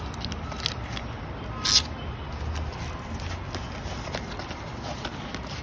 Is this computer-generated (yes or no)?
no